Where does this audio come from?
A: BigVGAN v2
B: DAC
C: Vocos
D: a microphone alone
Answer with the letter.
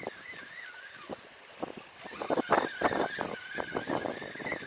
D